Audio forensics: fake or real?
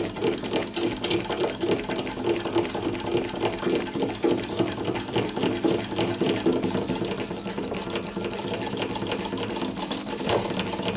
fake